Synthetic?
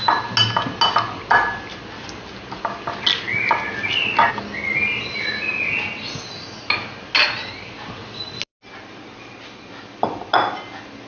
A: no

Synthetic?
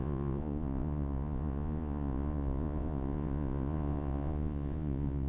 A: yes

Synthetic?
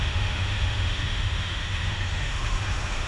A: yes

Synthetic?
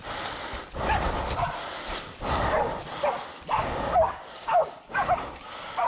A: no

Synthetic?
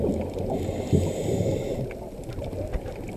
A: no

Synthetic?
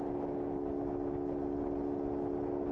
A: no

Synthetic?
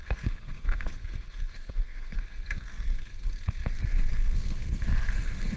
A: yes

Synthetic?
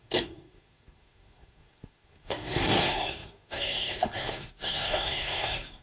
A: yes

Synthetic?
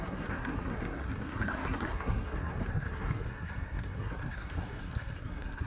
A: yes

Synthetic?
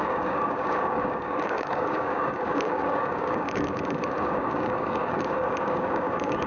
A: yes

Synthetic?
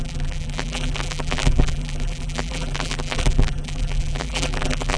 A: yes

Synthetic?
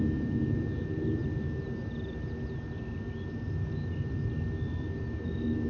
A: no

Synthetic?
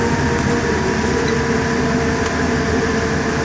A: no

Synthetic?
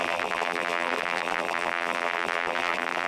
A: yes